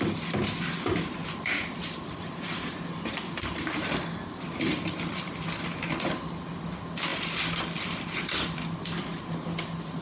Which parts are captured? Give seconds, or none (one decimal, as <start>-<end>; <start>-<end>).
0.0-10.0